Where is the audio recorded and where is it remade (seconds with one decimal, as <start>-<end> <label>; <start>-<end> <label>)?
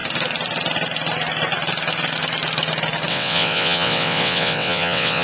0.0-3.1 recorded; 3.1-5.2 remade